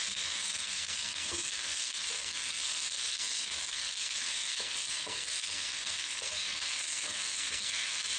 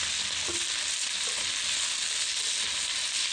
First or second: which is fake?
first